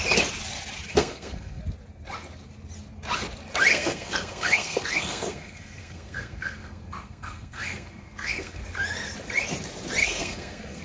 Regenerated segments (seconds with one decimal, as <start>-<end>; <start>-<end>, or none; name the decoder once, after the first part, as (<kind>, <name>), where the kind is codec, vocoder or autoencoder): 0.9-1.6 (codec, SNAC); 3.7-8.6; 10.0-10.8

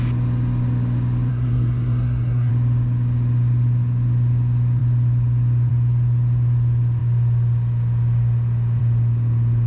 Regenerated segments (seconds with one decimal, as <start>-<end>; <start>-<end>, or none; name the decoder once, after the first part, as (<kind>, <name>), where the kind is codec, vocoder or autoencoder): 1.3-2.5 (codec, SNAC)

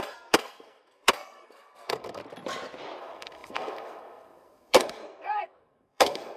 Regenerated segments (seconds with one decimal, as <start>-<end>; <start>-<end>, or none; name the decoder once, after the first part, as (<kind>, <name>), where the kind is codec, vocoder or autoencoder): 0.0-2.2 (codec, SNAC); 3.0-6.4

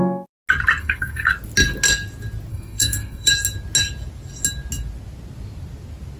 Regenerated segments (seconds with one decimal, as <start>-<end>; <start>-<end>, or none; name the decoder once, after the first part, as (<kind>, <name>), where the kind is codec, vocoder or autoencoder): 0.8-1.3 (codec, SNAC); 2.5-3.3

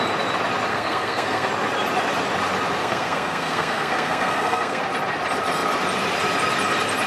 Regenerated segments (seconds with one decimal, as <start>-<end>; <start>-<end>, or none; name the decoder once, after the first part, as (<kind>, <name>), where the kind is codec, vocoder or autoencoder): 0.7-1.5 (codec, SNAC); 2.8-4.8

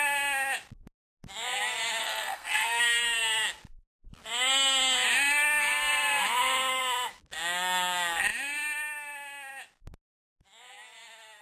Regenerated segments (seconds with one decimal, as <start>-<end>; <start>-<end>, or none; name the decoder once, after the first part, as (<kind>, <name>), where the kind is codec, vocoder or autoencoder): 2.0-2.8 (codec, SNAC)

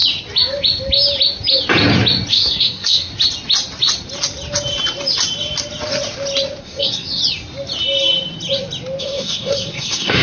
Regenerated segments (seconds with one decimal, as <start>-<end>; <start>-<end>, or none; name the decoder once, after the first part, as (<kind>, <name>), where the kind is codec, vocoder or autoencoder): 2.3-3.1 (codec, SNAC); 6.6-7.2; 9.0-10.2